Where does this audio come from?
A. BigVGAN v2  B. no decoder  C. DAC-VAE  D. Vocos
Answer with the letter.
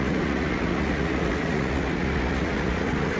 D